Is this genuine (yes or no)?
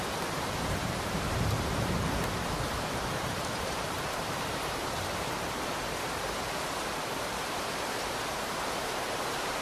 no